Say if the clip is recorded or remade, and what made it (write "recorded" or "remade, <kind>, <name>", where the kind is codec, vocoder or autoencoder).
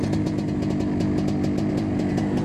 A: recorded